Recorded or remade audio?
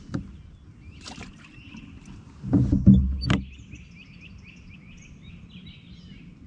recorded